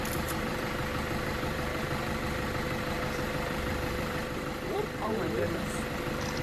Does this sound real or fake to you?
fake